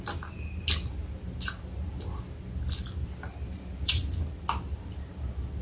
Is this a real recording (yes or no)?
yes